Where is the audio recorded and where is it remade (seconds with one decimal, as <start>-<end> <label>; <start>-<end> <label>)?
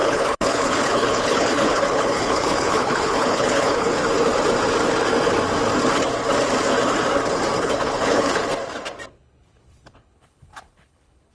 0.0-4.0 remade; 4.0-7.6 recorded; 7.6-8.4 remade; 8.4-9.1 recorded; 9.1-11.3 remade